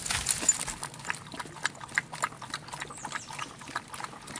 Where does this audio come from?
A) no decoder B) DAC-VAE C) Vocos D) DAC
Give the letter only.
A